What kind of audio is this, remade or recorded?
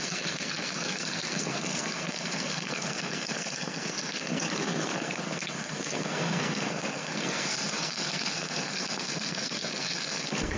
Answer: remade